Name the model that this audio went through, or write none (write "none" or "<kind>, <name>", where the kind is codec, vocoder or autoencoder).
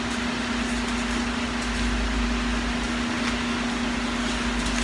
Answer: none